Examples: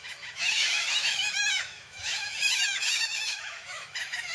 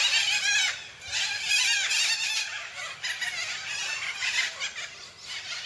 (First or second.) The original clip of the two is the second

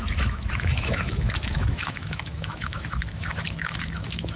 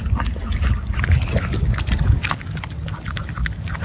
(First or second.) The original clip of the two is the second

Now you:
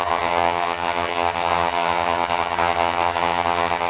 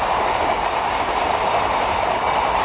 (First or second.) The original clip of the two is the second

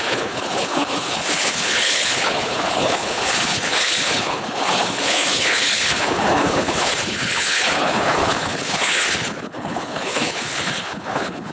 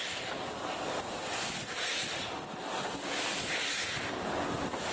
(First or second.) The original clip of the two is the second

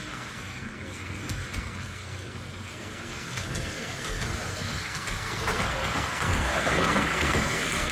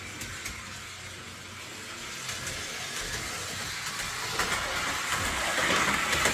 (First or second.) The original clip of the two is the second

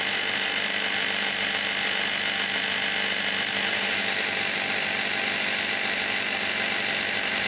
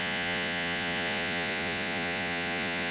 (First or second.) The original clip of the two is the first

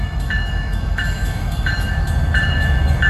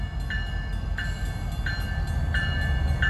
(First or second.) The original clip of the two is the second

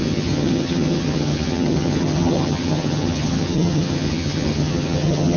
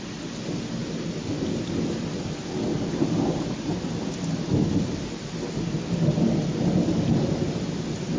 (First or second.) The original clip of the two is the second